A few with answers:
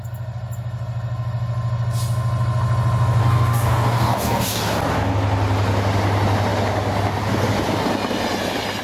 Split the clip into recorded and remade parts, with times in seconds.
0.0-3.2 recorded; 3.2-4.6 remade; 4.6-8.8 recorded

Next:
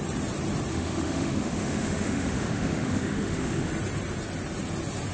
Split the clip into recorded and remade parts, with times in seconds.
0.0-0.7 recorded; 0.7-3.7 remade; 3.7-5.1 recorded